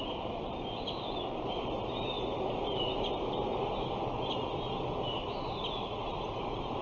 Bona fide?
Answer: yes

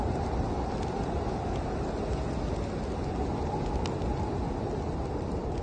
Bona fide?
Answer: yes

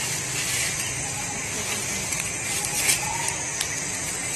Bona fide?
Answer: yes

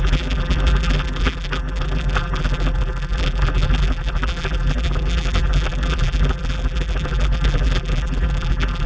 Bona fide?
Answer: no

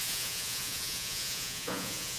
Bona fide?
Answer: no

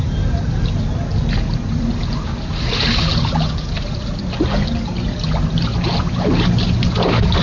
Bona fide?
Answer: yes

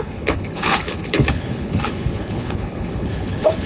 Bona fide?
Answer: no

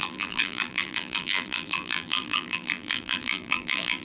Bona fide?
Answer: no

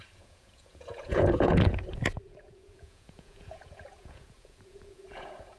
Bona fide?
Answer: no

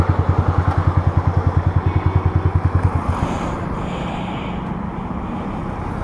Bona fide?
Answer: yes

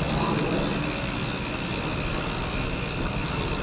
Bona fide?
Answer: yes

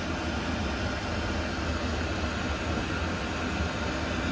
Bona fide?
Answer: yes